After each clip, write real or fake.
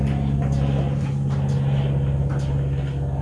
real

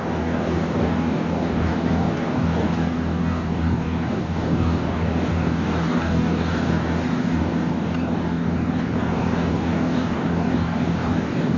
fake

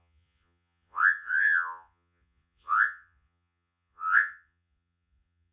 fake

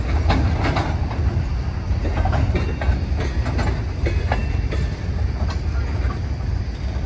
real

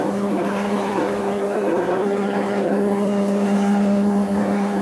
fake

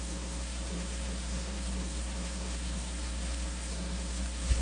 fake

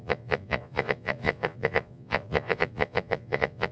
fake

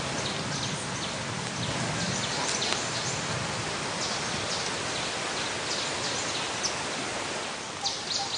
real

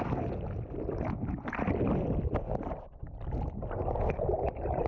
real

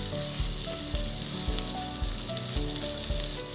real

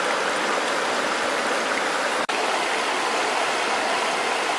real